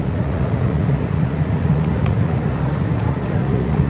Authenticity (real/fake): fake